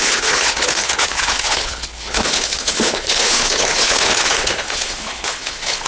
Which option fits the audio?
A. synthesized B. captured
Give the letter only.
A